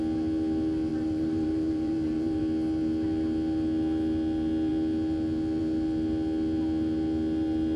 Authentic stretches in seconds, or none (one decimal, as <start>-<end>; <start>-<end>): 0.0-0.9; 2.4-7.8